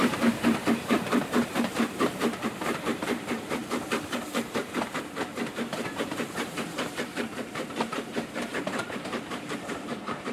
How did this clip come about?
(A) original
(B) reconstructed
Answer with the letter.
B